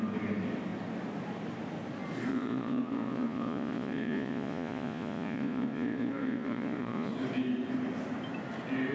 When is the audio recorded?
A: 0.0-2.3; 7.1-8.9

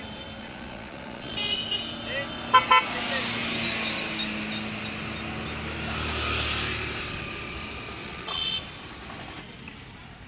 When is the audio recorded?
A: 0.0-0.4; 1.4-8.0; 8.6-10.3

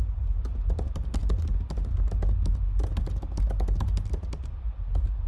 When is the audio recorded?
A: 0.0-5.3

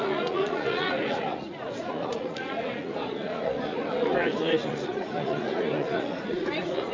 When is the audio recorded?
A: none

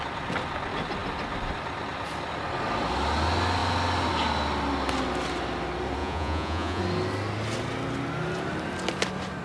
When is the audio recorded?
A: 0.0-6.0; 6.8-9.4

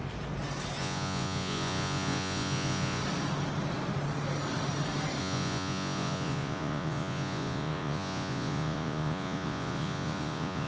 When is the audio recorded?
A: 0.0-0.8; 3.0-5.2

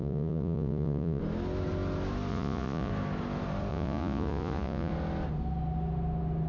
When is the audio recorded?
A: 1.2-2.3; 2.9-3.7; 4.9-6.5

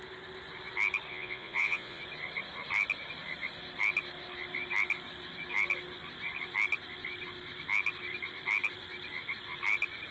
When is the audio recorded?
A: 0.0-1.1; 2.0-10.1